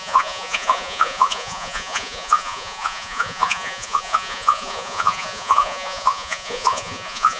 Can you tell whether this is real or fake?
fake